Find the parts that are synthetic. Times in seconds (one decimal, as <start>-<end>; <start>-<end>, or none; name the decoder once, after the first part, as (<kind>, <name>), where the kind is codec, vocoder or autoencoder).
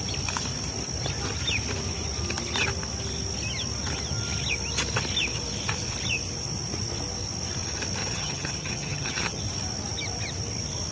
8.0-9.4 (vocoder, HiFi-GAN)